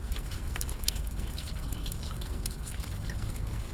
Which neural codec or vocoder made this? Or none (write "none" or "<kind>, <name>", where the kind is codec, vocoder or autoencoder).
codec, SNAC